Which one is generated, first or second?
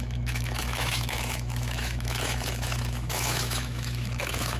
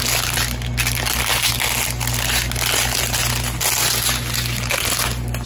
first